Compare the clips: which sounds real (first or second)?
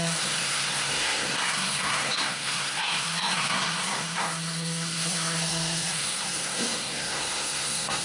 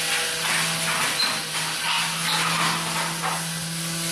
second